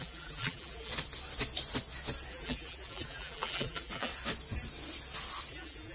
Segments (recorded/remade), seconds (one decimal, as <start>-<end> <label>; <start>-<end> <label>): 0.0-0.9 remade; 0.9-2.3 recorded; 2.3-4.1 remade; 4.1-5.5 recorded; 5.5-5.9 remade

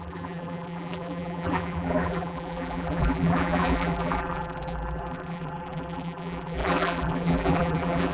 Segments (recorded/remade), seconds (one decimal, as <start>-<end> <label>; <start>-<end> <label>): 0.0-8.1 remade

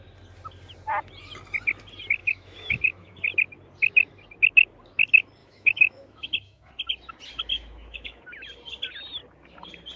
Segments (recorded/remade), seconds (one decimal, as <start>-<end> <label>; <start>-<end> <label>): 0.0-2.2 recorded; 2.2-3.1 remade; 3.1-5.4 recorded; 5.4-6.7 remade; 6.7-7.5 recorded; 7.5-8.2 remade; 8.2-10.0 recorded

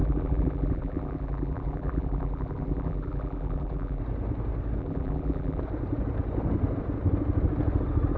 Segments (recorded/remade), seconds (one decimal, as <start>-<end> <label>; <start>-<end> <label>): 0.0-4.0 remade; 4.0-4.8 recorded; 4.8-5.6 remade; 5.6-8.2 recorded

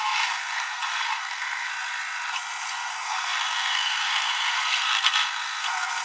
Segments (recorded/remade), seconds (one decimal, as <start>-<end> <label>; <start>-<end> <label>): 0.0-1.7 remade; 1.7-2.9 recorded; 2.9-6.0 remade

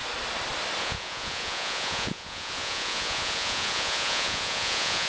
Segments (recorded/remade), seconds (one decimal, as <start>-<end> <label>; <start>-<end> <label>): 0.0-0.8 recorded; 0.8-5.1 remade

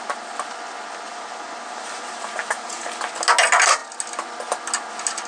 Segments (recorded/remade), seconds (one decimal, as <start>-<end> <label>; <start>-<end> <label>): 0.0-1.1 recorded; 1.1-2.9 remade; 2.9-5.3 recorded

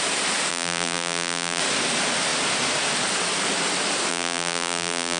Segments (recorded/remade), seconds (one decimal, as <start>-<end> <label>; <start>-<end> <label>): 0.0-0.5 recorded; 0.5-1.6 remade; 1.6-4.1 recorded; 4.1-5.2 remade